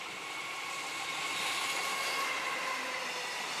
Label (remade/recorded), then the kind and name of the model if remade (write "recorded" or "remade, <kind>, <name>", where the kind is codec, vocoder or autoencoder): recorded